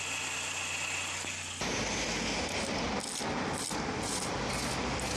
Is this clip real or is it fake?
real